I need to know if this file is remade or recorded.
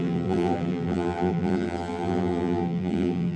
remade